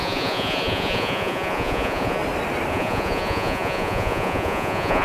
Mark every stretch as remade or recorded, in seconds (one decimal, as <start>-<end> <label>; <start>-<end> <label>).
0.0-2.2 remade; 2.2-2.7 recorded; 2.7-5.0 remade